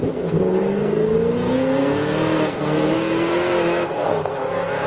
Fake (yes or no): yes